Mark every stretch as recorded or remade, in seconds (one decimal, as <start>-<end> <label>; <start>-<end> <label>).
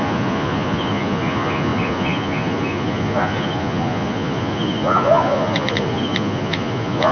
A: 0.0-7.1 remade